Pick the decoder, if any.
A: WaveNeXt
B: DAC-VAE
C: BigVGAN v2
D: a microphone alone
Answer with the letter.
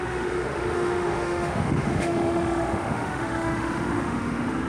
B